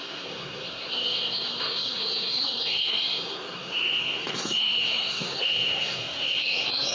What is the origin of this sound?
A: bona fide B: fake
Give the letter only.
B